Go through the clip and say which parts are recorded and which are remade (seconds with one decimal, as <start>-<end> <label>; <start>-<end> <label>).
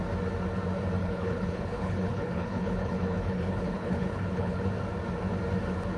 0.0-1.0 recorded; 1.0-4.6 remade; 4.6-6.0 recorded